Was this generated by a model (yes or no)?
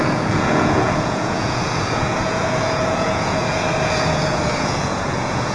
yes